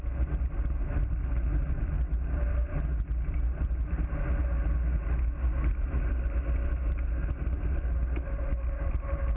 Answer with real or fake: real